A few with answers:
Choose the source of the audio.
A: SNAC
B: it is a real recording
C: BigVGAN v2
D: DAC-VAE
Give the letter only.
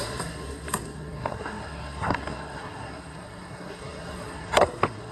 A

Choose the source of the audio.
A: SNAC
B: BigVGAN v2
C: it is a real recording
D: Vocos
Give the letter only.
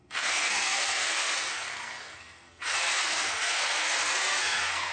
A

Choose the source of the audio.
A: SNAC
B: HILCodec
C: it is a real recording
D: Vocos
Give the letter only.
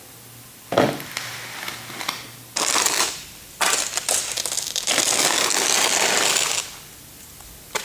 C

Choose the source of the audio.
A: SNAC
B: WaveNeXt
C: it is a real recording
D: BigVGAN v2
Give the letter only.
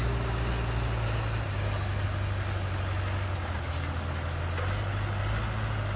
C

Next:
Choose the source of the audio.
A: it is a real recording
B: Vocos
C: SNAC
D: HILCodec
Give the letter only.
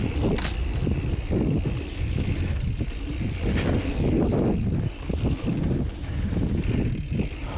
A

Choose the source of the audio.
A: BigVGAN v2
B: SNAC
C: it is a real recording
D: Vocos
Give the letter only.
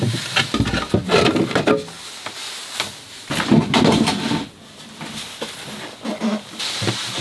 C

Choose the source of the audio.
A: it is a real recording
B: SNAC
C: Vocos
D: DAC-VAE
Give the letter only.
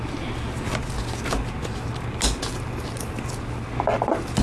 A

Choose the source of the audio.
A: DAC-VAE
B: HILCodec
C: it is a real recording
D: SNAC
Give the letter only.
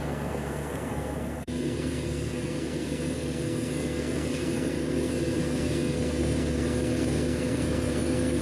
D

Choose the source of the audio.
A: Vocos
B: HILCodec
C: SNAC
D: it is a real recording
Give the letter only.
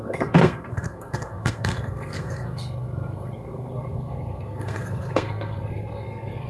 C